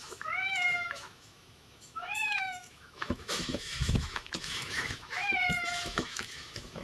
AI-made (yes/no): yes